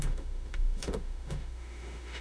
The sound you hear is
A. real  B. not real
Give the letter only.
B